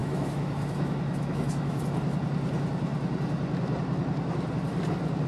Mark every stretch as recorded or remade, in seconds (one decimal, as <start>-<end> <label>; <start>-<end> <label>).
0.0-1.8 remade; 1.8-5.3 recorded